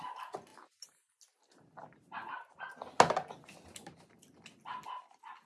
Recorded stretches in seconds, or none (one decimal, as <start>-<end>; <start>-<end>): 0.0-5.5